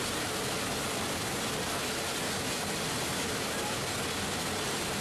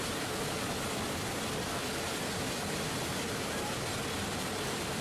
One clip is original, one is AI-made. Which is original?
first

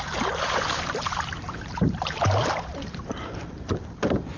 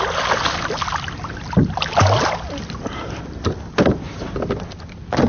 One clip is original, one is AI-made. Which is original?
second